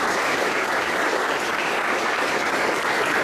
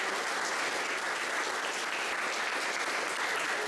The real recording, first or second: second